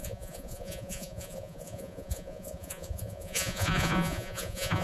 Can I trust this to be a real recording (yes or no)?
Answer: no